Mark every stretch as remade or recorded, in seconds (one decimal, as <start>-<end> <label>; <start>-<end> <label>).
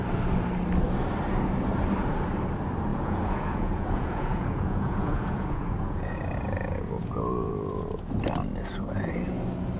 0.0-2.9 recorded; 2.9-8.0 remade; 8.0-9.8 recorded